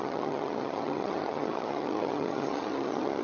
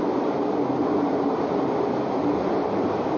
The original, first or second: second